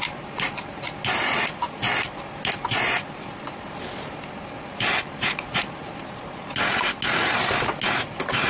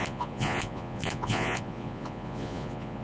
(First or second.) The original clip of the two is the first